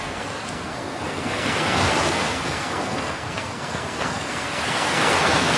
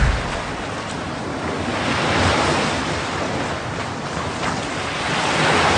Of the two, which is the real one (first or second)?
second